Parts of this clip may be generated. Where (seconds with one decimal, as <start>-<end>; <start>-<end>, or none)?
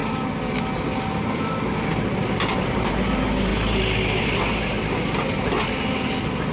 none